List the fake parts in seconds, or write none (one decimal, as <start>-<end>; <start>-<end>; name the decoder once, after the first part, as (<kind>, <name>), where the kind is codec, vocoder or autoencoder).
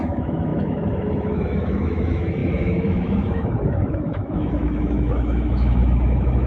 0.0-6.5 (autoencoder, DAC-VAE)